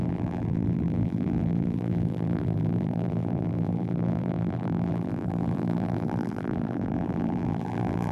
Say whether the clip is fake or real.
fake